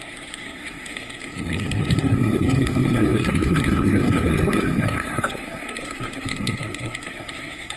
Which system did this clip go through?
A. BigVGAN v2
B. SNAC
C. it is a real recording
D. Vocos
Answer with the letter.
B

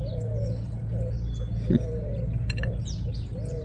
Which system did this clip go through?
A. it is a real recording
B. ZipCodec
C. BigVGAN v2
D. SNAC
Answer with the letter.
A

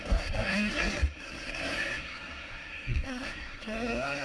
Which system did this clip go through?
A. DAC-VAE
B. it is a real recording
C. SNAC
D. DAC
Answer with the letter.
C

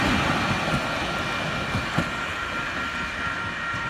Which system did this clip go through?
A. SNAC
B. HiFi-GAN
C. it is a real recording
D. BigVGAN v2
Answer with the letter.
C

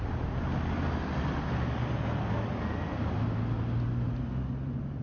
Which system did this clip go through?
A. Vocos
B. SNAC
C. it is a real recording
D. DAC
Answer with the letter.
C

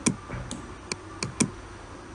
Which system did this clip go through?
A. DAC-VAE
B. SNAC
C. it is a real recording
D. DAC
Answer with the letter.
C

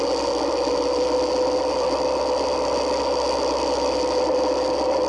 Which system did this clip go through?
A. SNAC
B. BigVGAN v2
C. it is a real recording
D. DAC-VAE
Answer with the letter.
C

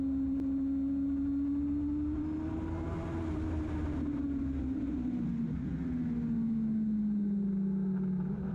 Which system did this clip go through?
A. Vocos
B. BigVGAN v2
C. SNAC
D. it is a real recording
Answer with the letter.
D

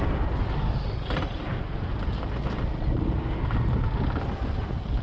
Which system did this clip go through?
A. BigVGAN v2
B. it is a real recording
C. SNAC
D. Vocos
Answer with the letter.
B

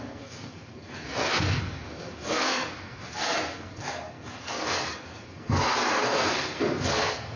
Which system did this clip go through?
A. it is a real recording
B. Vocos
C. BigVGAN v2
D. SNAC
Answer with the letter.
D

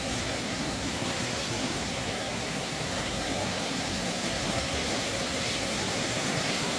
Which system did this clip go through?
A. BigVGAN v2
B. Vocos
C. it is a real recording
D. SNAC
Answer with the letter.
D